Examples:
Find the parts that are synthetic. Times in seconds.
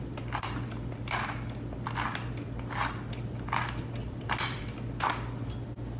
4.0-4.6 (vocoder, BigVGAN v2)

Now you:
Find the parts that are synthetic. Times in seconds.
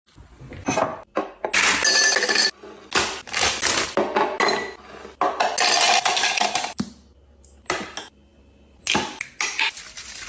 none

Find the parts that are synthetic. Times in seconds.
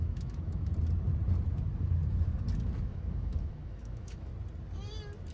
0.0-0.7 (autoencoder, DAC-VAE); 2.8-4.3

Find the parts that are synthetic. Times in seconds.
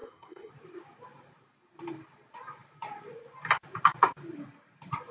0.0-0.5 (codec, SNAC)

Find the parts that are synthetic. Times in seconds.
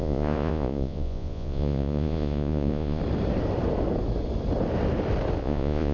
0.0-3.0 (vocoder, Vocos); 5.4-5.9